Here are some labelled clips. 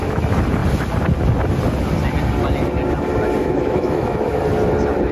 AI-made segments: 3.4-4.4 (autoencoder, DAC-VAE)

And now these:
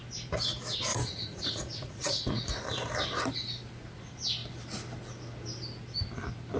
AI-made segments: 0.9-2.3 (vocoder, Vocos)

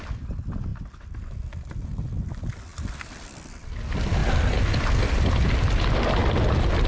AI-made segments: 4.2-5.0 (vocoder, BigVGAN v2); 6.2-6.9

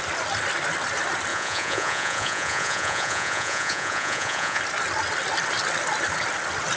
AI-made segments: 1.3-4.6 (vocoder, Vocos)